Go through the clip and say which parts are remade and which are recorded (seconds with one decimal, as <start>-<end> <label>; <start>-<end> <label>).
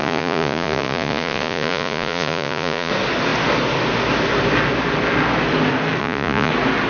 0.0-2.9 remade; 2.9-6.0 recorded; 6.0-6.5 remade; 6.5-6.9 recorded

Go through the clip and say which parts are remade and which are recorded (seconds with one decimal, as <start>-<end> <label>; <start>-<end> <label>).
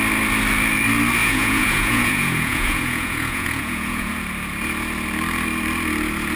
0.0-1.2 recorded; 1.2-4.1 remade; 4.1-6.4 recorded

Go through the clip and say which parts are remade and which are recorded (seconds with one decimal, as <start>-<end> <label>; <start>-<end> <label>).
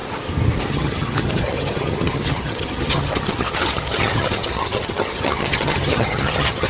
0.0-0.7 recorded; 0.7-6.7 remade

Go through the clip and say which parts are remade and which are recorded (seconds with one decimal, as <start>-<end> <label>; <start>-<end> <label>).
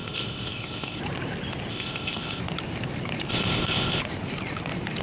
0.0-1.0 remade; 1.0-1.7 recorded; 1.7-2.4 remade; 2.4-3.3 recorded; 3.3-4.0 remade; 4.0-5.0 recorded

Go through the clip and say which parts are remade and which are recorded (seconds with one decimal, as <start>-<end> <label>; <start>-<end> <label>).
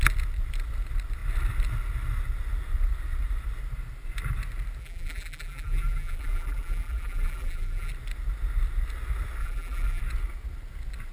0.0-4.8 recorded; 4.8-7.9 remade; 7.9-9.4 recorded; 9.4-10.0 remade; 10.0-11.1 recorded